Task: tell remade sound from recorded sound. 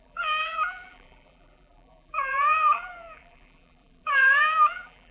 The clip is remade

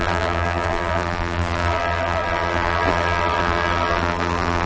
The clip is remade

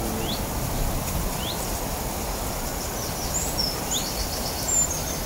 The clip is recorded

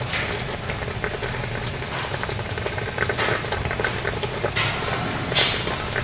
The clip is recorded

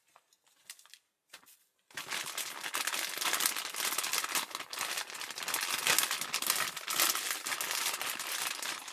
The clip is recorded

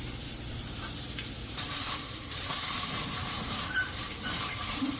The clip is remade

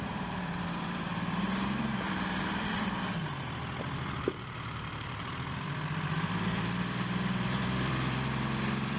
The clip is remade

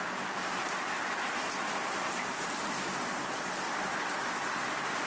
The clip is recorded